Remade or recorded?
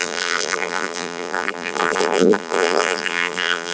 remade